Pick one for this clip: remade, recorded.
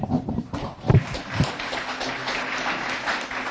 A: recorded